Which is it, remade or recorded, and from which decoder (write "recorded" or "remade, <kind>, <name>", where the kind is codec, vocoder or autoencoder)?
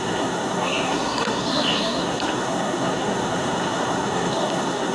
remade, codec, SNAC